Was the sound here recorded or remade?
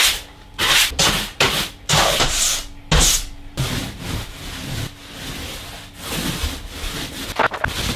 recorded